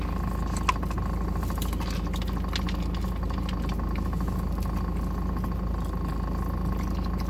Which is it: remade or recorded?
recorded